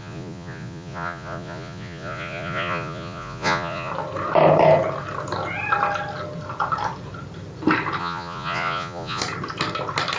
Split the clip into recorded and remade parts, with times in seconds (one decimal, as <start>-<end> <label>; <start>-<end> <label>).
0.0-3.9 remade; 3.9-8.0 recorded; 8.0-9.2 remade; 9.2-10.2 recorded